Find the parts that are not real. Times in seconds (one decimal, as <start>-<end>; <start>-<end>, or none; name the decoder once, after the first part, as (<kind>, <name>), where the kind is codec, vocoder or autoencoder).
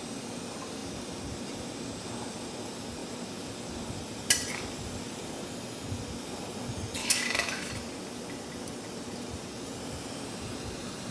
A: 7.0-7.7 (autoencoder, DAC-VAE)